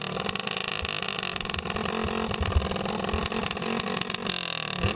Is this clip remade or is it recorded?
recorded